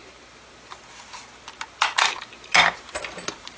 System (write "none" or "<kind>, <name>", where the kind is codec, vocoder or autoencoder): none